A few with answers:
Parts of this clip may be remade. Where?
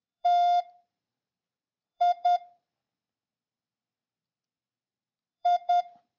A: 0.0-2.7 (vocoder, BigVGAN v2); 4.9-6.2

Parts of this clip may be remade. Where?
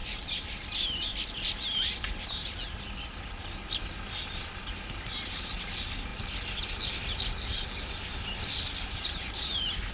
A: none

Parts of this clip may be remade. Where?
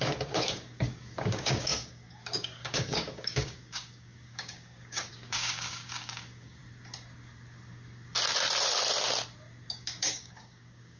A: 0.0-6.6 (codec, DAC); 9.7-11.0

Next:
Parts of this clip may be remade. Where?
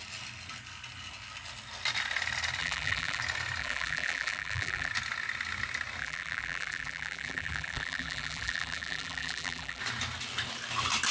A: 2.6-3.2 (vocoder, BigVGAN v2); 3.6-4.9; 6.0-9.8